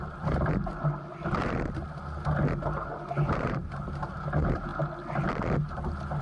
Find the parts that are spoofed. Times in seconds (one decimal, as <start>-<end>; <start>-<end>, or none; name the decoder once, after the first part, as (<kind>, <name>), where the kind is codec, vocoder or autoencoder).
0.0-0.7 (vocoder, BigVGAN v2); 2.6-4.7